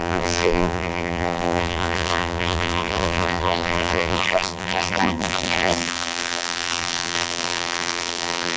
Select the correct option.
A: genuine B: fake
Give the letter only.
B